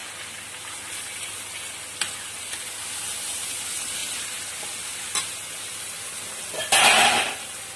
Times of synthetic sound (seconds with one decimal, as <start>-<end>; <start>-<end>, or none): none

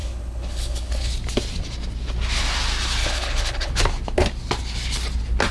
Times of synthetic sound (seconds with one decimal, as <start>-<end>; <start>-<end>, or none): 0.0-1.1; 3.0-3.7

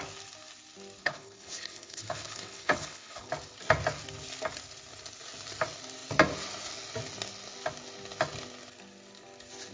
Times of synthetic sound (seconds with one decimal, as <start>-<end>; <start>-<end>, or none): 1.0-3.3

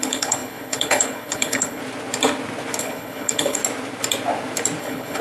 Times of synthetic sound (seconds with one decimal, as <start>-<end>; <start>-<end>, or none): 0.0-1.8; 2.8-3.6; 4.8-5.2

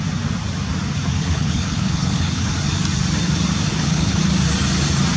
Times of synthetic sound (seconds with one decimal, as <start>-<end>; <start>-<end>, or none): 1.1-2.5; 3.7-4.2

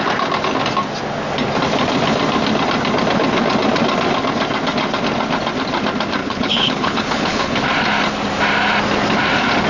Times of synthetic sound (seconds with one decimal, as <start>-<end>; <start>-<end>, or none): 6.2-7.6

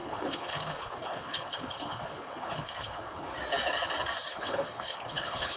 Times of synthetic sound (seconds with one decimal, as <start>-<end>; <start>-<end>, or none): 0.0-3.3; 4.3-5.6